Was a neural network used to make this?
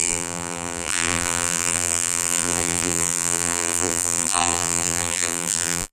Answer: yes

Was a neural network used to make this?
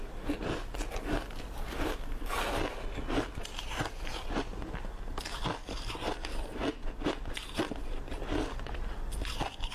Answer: no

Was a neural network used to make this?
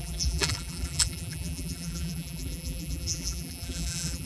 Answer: yes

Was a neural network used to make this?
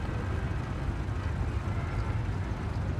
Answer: no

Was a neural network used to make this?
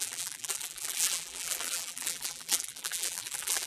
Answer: yes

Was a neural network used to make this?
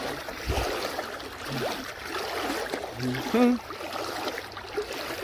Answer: no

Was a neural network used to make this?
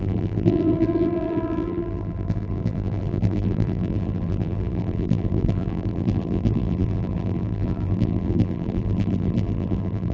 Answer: yes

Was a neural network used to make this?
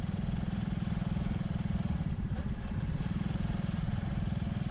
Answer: yes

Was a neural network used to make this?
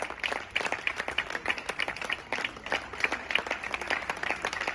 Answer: yes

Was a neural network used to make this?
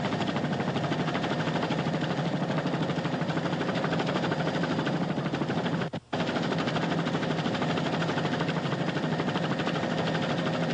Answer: no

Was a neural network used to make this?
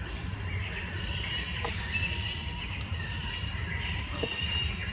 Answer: yes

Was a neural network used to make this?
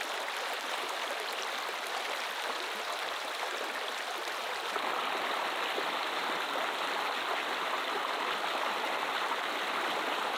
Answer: no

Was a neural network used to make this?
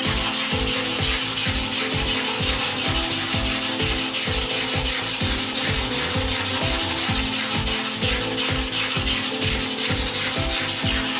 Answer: no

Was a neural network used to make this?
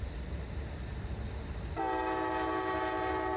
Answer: no